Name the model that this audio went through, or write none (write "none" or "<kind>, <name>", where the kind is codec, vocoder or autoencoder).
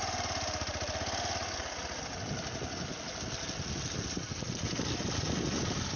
none